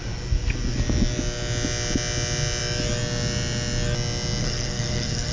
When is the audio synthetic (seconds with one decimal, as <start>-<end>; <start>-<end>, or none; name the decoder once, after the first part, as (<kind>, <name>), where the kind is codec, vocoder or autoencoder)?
4.4-5.3 (codec, SNAC)